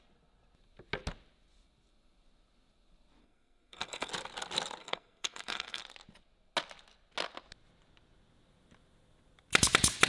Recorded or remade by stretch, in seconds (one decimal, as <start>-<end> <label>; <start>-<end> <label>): 0.0-3.2 recorded; 3.2-4.1 remade; 4.1-4.8 recorded; 4.8-5.8 remade; 5.8-10.1 recorded